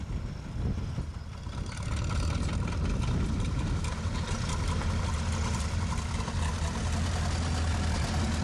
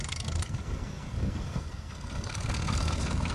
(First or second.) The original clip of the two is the first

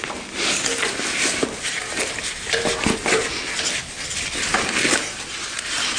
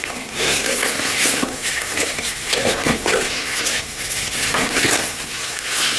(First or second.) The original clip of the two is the first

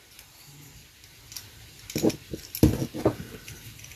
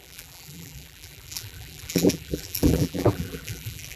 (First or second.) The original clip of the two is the first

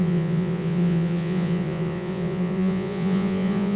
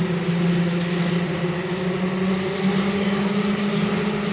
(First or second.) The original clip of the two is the second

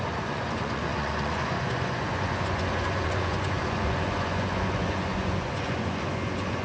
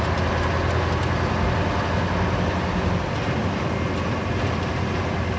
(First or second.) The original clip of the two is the second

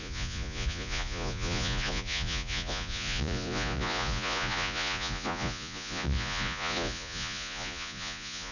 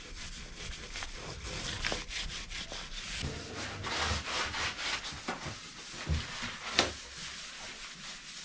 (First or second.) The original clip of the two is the second